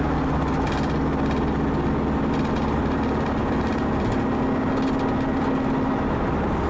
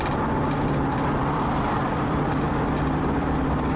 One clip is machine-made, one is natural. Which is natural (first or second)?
first